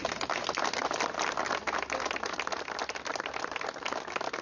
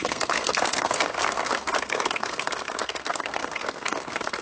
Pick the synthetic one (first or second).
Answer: second